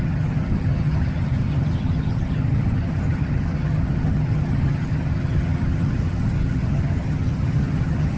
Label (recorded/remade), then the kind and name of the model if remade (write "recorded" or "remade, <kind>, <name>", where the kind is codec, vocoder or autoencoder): remade, vocoder, HiFi-GAN